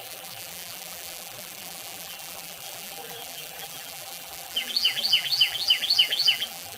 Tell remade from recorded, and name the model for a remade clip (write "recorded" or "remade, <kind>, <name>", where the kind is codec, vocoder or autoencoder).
remade, vocoder, BigVGAN v2